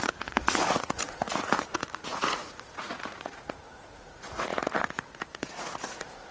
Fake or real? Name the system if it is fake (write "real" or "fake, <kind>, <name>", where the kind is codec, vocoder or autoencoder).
fake, vocoder, Vocos